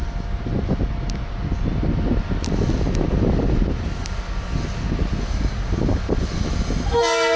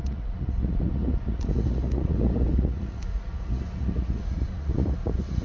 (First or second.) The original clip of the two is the first